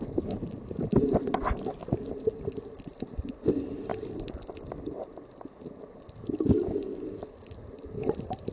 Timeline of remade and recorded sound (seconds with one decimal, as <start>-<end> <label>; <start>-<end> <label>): 0.0-8.5 recorded